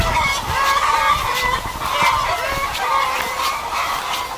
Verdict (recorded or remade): recorded